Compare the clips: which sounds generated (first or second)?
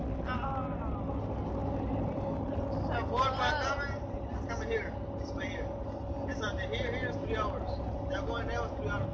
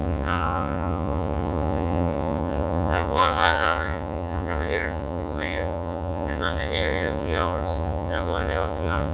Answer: second